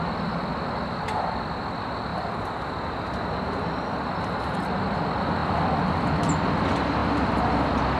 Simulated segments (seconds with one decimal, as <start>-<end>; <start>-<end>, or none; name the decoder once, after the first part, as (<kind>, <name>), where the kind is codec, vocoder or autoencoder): none